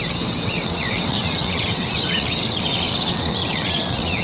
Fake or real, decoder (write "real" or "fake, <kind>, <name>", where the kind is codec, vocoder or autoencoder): fake, vocoder, WaveNeXt